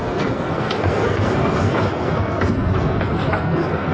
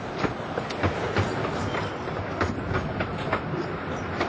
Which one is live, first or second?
second